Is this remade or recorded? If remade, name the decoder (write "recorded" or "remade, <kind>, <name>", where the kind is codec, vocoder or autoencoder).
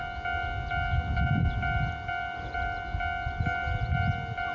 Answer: recorded